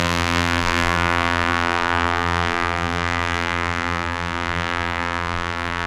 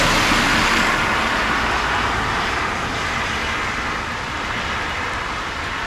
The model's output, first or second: first